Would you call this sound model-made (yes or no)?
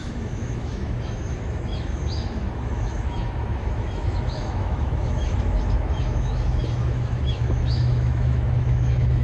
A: yes